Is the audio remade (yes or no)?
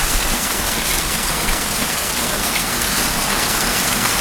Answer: yes